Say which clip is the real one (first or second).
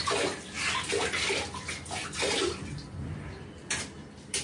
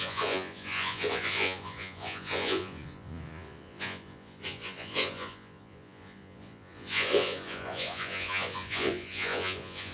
first